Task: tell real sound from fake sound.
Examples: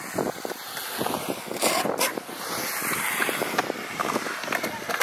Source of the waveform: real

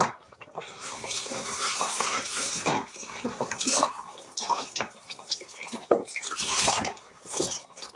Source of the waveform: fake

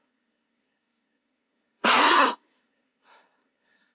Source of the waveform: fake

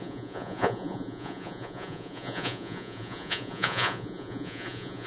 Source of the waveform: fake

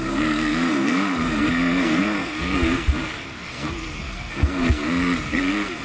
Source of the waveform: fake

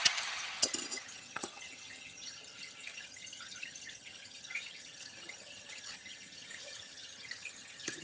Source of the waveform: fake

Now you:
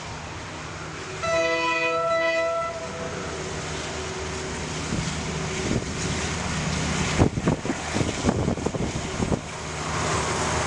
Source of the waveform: real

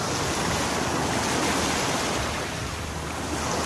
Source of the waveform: real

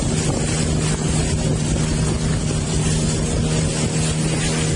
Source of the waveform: real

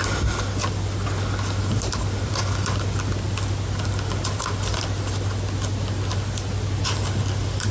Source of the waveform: real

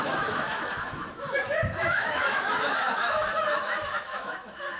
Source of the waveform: fake